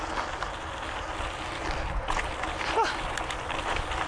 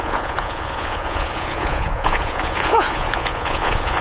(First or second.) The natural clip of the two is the first